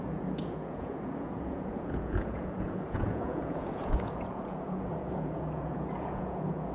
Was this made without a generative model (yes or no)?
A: no